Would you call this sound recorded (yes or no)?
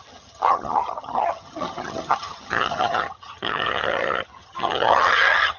no